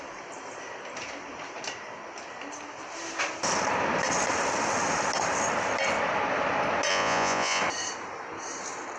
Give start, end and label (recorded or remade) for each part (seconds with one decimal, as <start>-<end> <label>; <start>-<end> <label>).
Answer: 0.0-6.9 recorded; 6.9-7.6 remade; 7.6-9.0 recorded